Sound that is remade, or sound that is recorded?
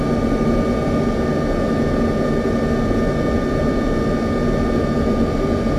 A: recorded